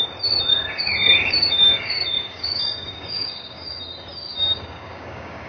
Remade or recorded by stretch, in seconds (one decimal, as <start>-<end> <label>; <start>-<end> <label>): 0.0-0.5 recorded; 0.5-3.8 remade; 3.8-4.3 recorded; 4.3-5.5 remade